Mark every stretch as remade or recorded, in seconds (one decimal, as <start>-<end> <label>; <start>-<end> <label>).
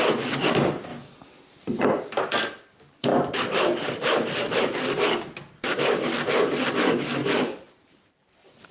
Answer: 0.0-3.1 recorded; 3.1-4.6 remade; 4.6-7.2 recorded; 7.2-8.7 remade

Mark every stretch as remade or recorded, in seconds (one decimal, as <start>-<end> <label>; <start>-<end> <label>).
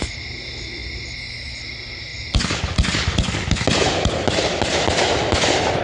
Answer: 0.0-5.8 recorded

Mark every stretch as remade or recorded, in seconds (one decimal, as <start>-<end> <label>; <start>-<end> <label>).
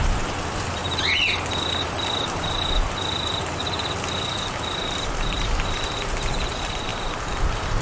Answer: 0.0-0.8 remade; 0.8-1.8 recorded; 1.8-3.6 remade; 3.6-4.1 recorded; 4.1-6.9 remade; 6.9-7.8 recorded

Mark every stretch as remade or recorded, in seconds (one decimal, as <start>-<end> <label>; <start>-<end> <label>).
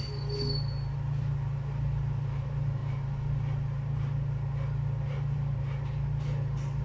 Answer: 0.0-6.8 recorded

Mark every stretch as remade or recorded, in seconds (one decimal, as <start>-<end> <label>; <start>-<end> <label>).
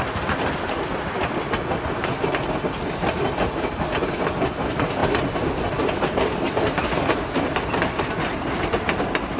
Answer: 0.0-9.4 recorded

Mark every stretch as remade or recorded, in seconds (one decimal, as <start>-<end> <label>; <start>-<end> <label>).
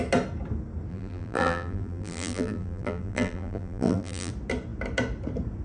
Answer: 0.0-0.9 recorded; 0.9-4.3 remade; 4.3-5.6 recorded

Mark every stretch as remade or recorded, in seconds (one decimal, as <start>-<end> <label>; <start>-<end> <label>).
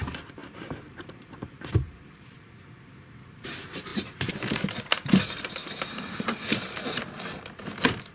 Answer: 0.0-8.1 remade